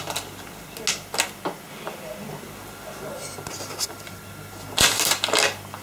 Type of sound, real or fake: real